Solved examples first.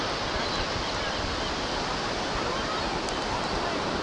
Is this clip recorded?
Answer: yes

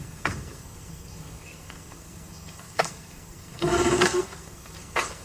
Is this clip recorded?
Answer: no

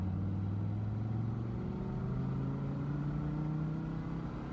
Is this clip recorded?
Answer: yes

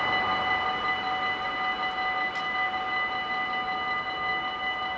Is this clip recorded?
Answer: yes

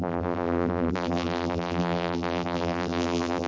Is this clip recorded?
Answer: no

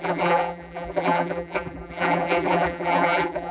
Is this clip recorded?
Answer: no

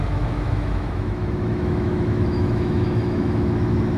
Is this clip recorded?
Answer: no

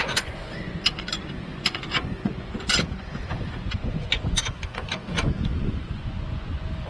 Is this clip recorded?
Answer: no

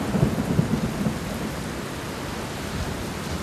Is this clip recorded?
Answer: yes